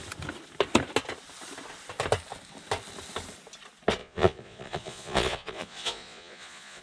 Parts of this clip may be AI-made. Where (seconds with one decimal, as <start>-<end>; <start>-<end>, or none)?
4.0-6.8